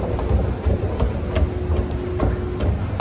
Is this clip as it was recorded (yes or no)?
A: yes